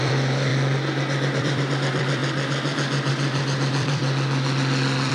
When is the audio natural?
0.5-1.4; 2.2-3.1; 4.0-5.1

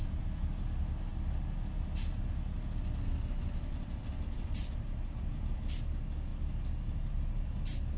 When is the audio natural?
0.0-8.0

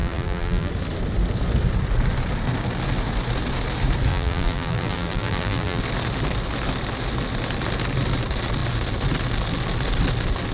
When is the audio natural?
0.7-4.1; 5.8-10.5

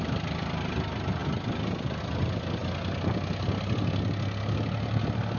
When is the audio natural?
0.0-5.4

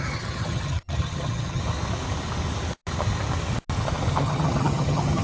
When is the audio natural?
1.6-4.2